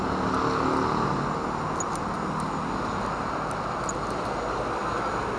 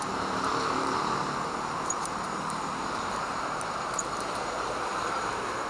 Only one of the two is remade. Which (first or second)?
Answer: second